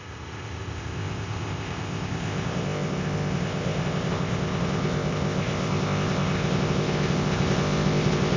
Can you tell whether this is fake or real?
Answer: fake